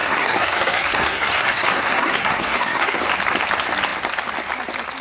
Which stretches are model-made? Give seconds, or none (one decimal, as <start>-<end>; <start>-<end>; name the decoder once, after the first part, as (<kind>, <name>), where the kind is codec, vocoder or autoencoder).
0.0-3.0 (codec, SNAC)